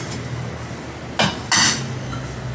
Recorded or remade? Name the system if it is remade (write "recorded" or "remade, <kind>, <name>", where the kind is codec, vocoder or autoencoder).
recorded